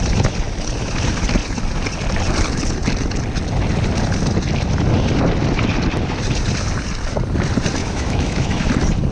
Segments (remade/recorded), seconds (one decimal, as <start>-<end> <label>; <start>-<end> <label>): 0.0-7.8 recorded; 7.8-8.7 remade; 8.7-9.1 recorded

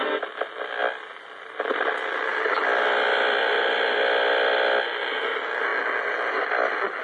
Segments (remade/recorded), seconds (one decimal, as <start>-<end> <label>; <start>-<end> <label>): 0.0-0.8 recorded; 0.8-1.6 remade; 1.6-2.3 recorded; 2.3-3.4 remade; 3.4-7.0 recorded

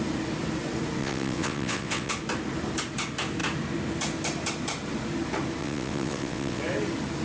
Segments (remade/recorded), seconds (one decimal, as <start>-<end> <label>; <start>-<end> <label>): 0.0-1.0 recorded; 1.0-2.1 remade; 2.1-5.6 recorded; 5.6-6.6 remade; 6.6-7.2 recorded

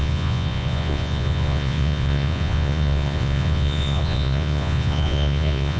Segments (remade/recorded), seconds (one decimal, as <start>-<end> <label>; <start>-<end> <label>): 0.0-5.8 remade